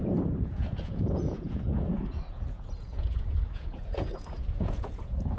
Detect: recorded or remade remade